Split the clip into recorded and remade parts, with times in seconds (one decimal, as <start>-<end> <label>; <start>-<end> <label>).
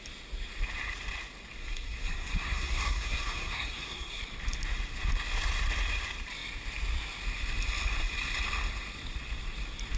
0.0-1.6 recorded; 1.6-4.2 remade; 4.2-10.0 recorded